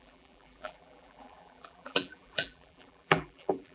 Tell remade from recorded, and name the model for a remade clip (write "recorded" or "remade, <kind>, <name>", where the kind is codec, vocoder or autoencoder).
remade, vocoder, BigVGAN v2